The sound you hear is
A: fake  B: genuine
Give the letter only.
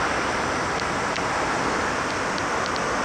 B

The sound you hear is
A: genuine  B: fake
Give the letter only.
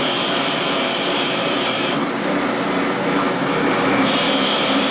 B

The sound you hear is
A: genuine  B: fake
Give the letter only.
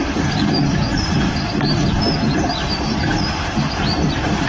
B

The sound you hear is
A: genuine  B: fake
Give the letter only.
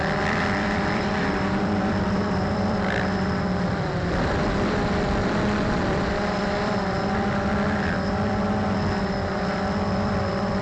B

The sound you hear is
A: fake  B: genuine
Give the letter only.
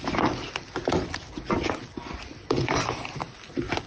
B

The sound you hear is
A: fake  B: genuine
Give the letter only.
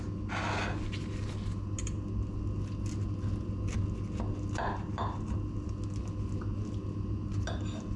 B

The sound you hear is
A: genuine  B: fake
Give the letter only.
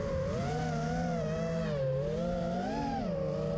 A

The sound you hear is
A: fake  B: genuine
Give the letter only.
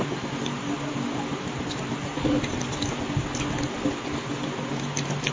B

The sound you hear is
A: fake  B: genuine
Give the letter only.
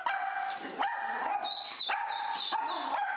B